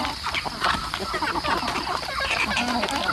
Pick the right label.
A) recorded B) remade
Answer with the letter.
A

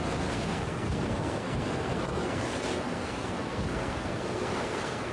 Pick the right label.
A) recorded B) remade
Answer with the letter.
B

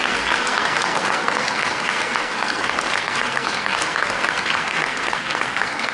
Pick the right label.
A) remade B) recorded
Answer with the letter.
A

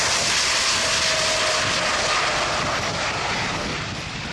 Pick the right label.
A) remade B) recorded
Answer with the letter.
B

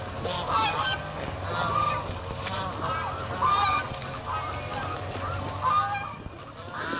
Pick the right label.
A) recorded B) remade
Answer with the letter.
A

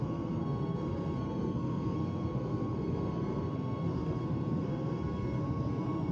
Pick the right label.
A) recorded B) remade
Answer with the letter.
B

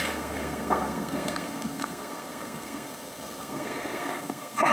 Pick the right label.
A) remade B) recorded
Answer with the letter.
A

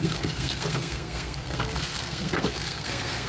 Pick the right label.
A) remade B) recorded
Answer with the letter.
A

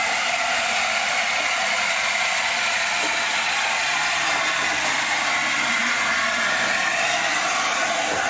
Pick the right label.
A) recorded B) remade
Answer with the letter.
A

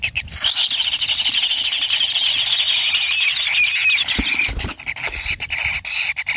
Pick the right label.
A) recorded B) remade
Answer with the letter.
A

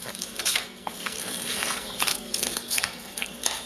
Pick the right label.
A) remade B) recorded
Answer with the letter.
A